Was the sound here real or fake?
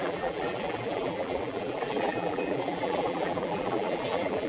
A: fake